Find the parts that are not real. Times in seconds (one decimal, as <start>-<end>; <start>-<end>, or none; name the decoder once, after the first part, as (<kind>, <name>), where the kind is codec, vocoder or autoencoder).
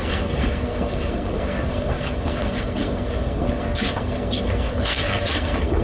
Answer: 0.0-5.8 (codec, SNAC)